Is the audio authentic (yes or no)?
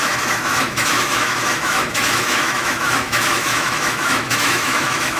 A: no